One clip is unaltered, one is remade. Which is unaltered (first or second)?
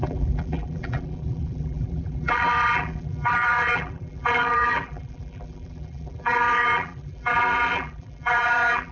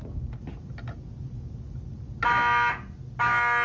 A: second